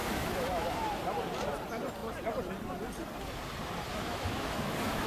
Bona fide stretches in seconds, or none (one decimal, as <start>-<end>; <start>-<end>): 0.7-3.9